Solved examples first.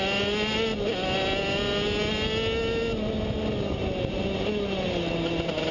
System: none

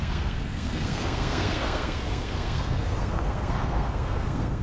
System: codec, SNAC